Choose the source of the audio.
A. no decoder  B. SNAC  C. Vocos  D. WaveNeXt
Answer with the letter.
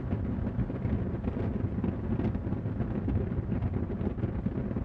A